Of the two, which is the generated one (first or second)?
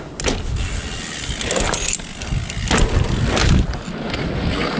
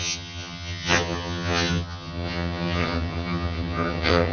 second